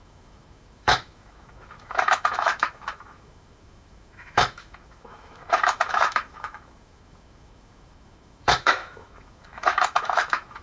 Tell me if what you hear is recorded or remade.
remade